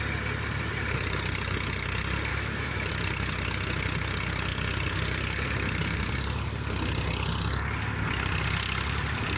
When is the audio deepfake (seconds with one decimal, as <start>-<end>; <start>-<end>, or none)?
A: 2.3-2.9